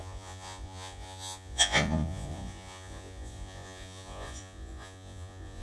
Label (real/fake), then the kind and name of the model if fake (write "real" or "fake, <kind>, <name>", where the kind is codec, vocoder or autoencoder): fake, vocoder, Vocos